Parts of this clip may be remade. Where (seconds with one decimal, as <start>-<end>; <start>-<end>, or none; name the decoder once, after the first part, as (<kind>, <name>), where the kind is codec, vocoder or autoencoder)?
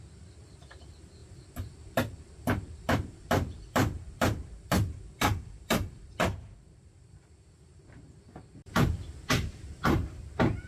0.0-10.7 (vocoder, BigVGAN v2)